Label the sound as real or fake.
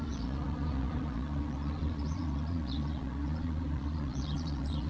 fake